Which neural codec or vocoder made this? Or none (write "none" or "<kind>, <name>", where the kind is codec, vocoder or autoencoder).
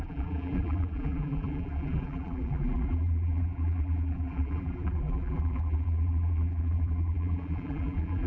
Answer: vocoder, BigVGAN v2